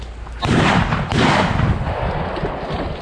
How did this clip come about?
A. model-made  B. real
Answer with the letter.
B